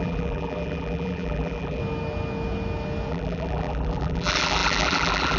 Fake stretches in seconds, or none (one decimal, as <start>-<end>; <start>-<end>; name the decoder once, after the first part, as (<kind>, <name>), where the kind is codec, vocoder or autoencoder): 0.0-1.8 (vocoder, BigVGAN v2); 3.1-5.4